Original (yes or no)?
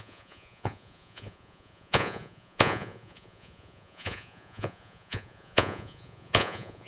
no